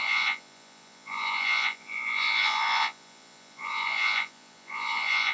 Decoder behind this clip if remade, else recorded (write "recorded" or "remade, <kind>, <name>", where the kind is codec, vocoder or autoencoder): remade, vocoder, Vocos